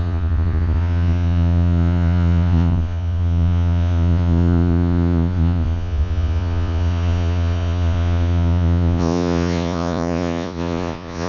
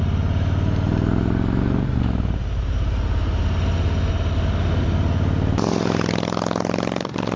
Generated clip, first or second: first